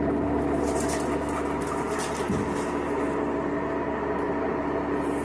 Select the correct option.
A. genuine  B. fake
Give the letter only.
A